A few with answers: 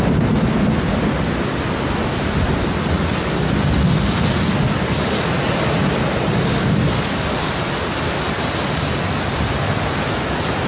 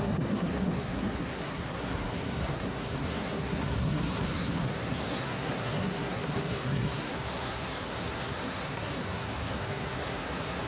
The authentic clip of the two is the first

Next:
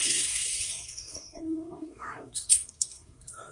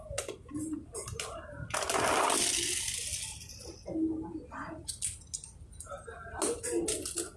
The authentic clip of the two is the second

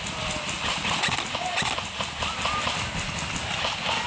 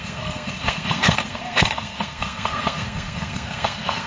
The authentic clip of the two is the first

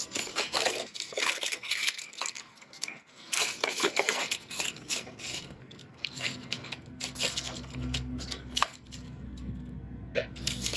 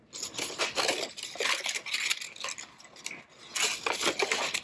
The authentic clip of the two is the second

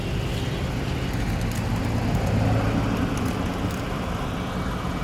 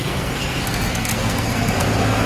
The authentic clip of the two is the first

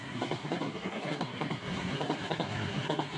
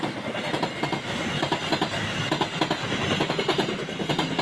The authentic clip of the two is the second